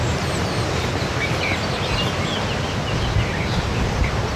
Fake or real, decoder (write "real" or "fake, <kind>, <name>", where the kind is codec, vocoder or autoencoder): real